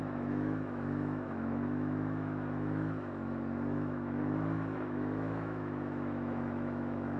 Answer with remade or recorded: remade